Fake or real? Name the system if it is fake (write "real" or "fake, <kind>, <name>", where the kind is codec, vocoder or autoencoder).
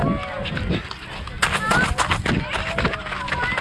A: real